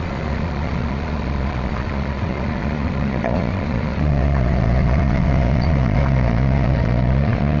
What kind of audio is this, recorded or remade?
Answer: remade